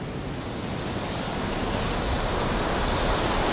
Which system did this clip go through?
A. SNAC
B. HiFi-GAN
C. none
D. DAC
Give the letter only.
C